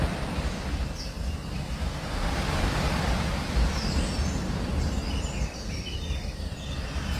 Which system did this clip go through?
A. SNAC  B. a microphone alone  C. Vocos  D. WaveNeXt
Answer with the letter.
B